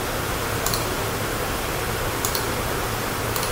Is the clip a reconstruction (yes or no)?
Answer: no